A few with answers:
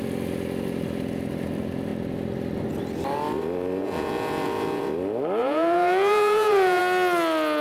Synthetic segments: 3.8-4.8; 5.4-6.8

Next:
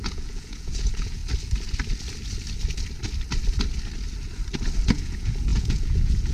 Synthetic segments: 0.0-1.2; 4.9-6.3

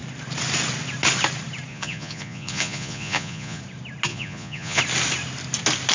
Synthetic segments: 1.7-3.6; 4.1-4.8

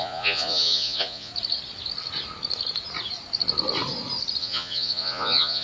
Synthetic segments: 0.0-1.3; 4.4-5.6

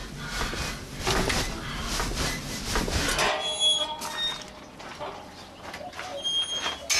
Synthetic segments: none

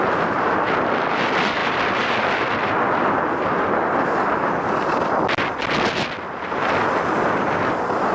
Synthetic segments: none